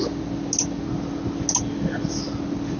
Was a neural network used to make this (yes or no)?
no